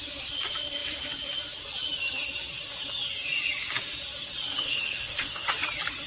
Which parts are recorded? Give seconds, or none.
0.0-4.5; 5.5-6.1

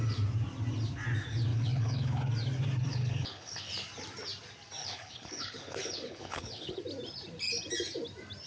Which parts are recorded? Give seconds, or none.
0.0-1.5; 2.3-2.9; 3.7-4.8; 6.8-8.5